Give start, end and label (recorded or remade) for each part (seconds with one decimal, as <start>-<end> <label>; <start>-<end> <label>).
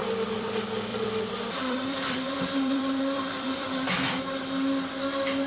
0.0-0.5 remade; 0.5-0.9 recorded; 0.9-4.2 remade; 4.2-5.5 recorded